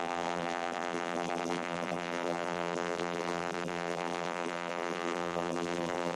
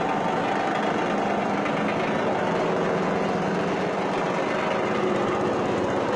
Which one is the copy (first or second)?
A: first